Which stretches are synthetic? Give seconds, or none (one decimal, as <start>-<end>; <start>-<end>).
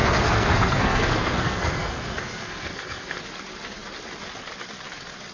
0.0-3.2